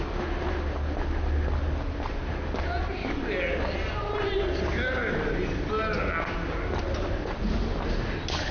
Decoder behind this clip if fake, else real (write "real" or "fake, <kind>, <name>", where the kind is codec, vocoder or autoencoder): real